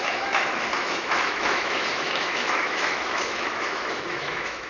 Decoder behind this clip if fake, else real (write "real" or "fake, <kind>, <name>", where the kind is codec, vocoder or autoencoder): fake, autoencoder, DAC-VAE